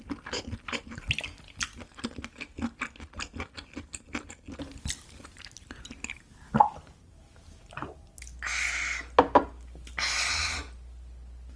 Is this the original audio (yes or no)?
yes